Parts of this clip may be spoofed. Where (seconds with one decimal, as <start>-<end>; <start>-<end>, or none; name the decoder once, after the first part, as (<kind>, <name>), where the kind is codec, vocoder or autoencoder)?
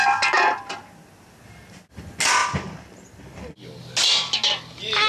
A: none